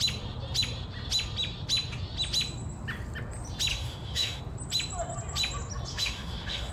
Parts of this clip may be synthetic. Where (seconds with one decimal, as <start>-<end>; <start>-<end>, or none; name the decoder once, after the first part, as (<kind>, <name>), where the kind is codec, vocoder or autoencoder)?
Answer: 3.7-4.4 (autoencoder, DAC-VAE); 5.9-6.7